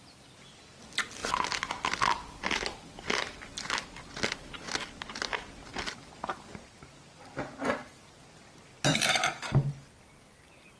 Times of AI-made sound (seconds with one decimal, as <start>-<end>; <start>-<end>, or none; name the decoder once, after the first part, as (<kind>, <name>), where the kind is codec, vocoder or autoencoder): none